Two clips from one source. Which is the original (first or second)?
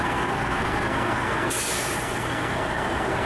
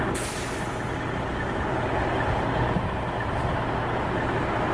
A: second